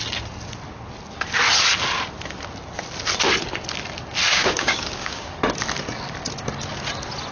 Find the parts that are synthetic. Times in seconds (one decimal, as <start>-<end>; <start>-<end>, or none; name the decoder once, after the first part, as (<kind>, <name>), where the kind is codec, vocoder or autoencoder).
4.3-5.3 (codec, DAC)